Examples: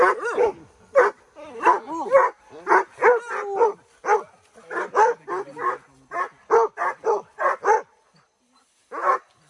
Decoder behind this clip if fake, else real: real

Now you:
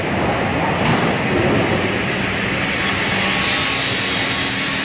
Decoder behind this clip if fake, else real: real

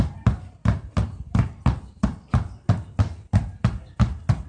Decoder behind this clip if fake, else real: real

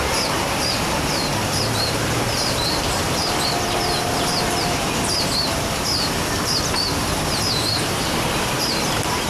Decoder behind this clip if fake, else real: fake, vocoder, BigVGAN v2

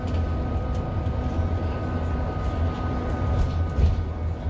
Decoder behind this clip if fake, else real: real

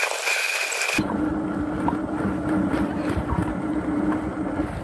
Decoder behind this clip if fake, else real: real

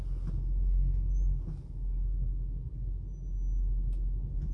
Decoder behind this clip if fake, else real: real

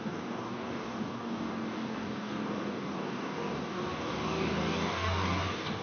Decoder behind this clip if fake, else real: fake, codec, DAC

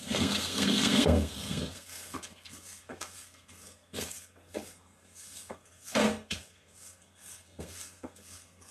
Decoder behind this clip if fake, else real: fake, codec, SNAC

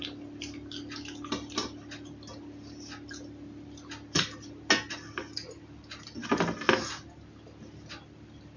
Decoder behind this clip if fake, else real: real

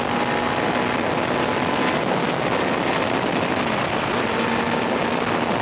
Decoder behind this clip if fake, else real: real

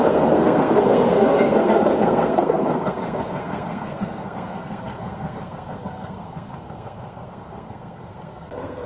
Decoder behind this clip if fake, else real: fake, codec, SNAC